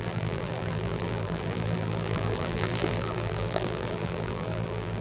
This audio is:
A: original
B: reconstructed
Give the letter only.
B